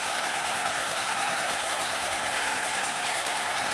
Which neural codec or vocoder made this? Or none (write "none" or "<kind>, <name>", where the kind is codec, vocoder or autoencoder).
codec, SNAC